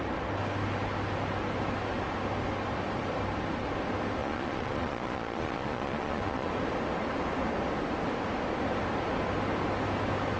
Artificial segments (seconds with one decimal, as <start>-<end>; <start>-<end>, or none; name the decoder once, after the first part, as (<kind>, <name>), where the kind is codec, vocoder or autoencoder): 4.2-6.5 (vocoder, Vocos)